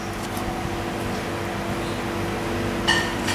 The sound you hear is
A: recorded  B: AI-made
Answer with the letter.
A